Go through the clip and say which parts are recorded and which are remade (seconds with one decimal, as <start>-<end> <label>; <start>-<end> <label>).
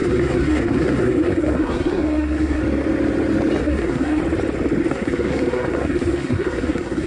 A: 0.0-2.6 remade; 2.6-3.6 recorded; 3.6-4.2 remade; 4.2-4.9 recorded; 4.9-7.1 remade